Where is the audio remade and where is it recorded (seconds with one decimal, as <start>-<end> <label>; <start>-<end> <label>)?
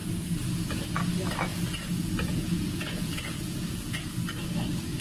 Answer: 0.0-1.5 recorded; 1.5-4.0 remade; 4.0-5.0 recorded